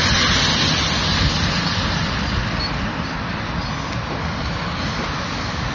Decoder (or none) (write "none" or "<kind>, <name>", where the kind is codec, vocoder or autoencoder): none